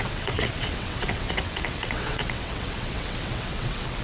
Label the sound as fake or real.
fake